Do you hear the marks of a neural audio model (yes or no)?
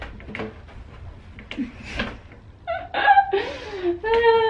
no